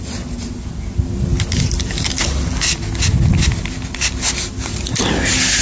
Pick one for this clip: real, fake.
real